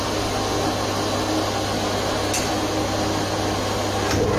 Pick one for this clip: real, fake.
real